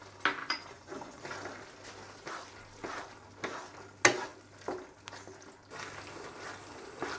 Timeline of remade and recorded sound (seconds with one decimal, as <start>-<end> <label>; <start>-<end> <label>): 0.0-0.4 recorded; 0.4-1.2 remade; 1.2-7.2 recorded